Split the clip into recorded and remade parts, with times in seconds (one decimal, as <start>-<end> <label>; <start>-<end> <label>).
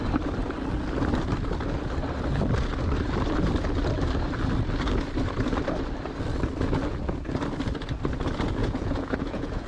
0.0-8.6 recorded; 8.6-9.7 remade